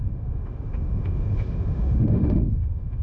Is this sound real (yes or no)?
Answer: no